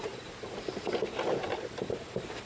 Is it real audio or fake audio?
real